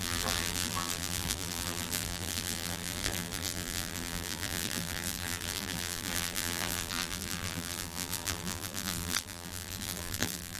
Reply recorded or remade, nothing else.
remade